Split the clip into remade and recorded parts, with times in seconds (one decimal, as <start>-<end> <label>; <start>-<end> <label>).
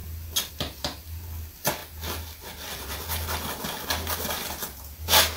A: 0.0-5.4 recorded